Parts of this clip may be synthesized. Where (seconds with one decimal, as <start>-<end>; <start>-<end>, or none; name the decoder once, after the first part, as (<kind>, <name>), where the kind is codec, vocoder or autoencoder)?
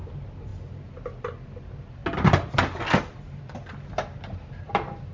none